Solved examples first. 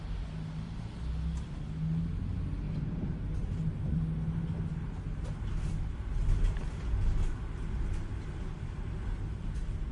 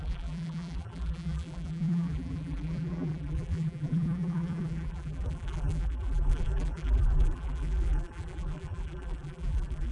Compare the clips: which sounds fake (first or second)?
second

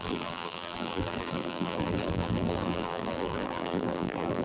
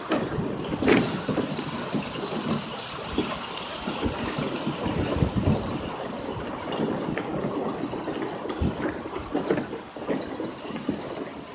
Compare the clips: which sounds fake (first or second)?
first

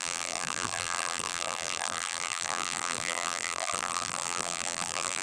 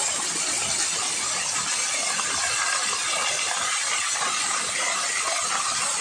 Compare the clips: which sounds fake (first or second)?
first